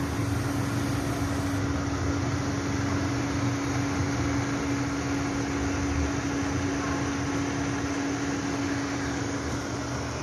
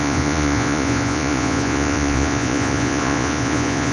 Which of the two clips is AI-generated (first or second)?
second